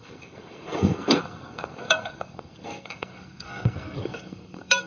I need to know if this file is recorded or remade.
remade